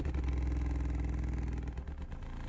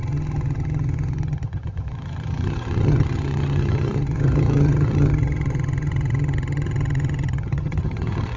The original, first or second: first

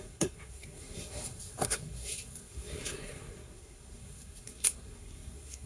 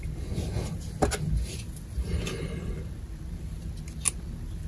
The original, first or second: second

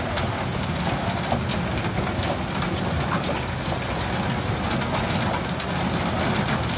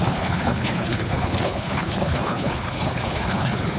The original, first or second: first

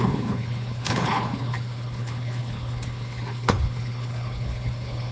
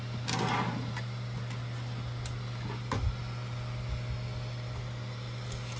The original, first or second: second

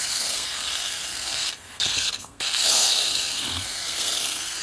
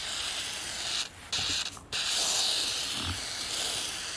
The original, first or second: second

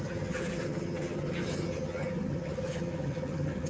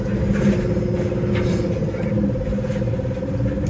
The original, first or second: second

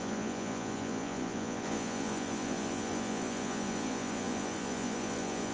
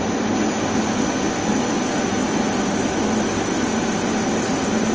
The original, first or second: second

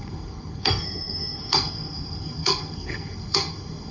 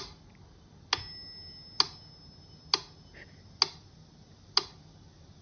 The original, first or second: second